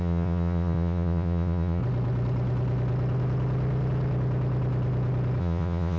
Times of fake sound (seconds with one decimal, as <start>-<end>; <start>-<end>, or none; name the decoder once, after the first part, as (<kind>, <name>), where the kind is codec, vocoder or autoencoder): 0.0-1.8 (vocoder, Vocos); 5.4-6.0